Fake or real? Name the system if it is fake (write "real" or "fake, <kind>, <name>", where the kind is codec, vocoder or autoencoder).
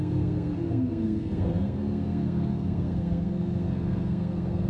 fake, codec, SNAC